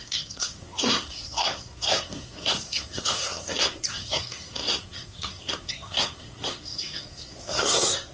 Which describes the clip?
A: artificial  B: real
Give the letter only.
A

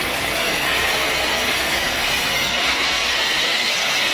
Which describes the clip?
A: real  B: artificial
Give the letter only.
B